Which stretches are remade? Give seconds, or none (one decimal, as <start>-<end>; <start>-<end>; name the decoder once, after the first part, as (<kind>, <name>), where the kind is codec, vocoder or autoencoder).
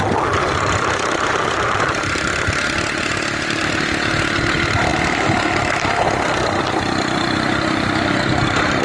none